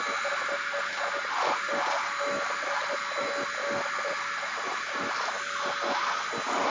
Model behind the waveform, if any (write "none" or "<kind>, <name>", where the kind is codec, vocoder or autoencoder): none